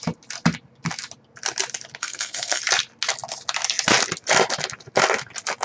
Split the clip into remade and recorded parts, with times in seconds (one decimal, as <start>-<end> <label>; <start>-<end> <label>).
0.0-2.0 recorded; 2.0-2.6 remade; 2.6-5.6 recorded